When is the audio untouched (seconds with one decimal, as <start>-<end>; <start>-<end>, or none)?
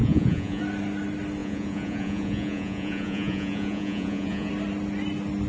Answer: 0.6-1.4; 4.5-5.5